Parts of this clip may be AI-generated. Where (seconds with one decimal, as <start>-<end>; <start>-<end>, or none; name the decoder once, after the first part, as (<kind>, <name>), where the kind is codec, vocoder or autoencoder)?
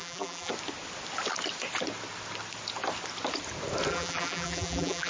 0.0-0.5 (vocoder, BigVGAN v2); 3.9-5.1